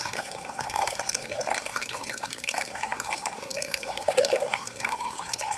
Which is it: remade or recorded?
remade